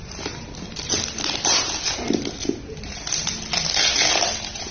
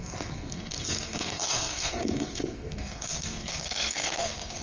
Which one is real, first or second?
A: first